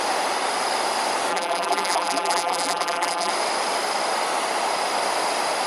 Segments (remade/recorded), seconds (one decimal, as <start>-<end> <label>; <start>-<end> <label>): 0.0-1.3 recorded; 1.3-3.3 remade; 3.3-5.7 recorded

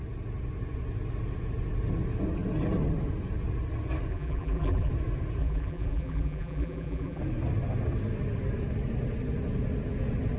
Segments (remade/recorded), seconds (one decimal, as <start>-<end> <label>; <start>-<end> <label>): 0.0-4.1 recorded; 4.1-4.9 remade; 4.9-5.4 recorded; 5.4-7.2 remade; 7.2-10.4 recorded

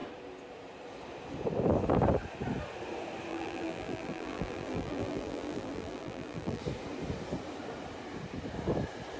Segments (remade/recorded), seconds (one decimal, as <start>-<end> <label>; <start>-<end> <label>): 0.0-3.3 recorded; 3.3-6.6 remade; 6.6-9.2 recorded